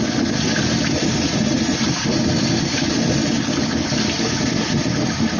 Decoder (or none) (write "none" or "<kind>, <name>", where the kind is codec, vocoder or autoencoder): none